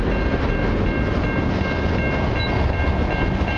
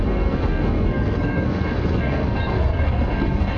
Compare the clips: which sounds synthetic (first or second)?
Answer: second